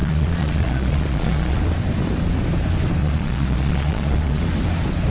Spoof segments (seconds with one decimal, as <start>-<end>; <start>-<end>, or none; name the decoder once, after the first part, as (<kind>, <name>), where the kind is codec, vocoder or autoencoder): 0.0-1.6 (vocoder, Vocos); 3.0-4.4